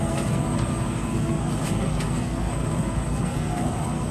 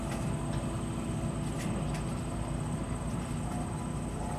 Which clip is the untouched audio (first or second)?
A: second